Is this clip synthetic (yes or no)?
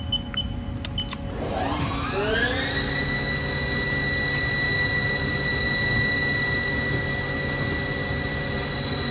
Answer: no